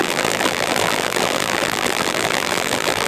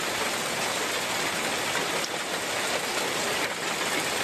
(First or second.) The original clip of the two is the second